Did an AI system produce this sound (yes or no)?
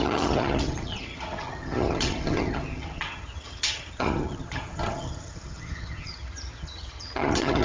yes